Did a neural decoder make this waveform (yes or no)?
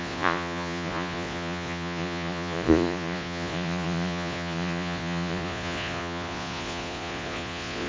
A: yes